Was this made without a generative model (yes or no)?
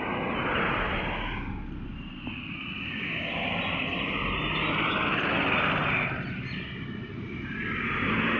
yes